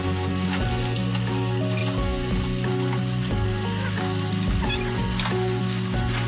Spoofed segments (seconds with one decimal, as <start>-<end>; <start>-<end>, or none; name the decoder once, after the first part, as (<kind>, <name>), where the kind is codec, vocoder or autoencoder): none